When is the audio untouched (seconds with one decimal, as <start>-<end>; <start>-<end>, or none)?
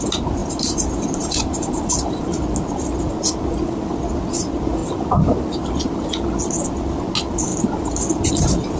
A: 0.0-0.4; 1.9-8.8